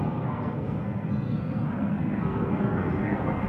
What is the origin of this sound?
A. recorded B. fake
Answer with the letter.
B